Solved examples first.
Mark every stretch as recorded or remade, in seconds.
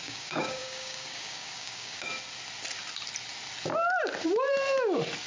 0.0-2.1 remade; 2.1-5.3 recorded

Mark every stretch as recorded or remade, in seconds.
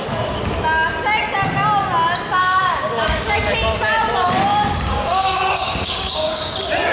0.0-2.4 recorded; 2.4-3.5 remade; 3.5-4.5 recorded; 4.5-6.5 remade; 6.5-6.9 recorded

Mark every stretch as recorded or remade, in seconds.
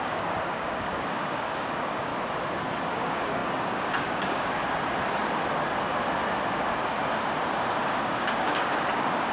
0.0-2.1 remade; 2.1-2.9 recorded; 2.9-4.6 remade; 4.6-7.8 recorded; 7.8-9.3 remade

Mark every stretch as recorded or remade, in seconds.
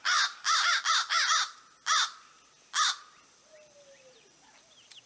0.0-5.1 recorded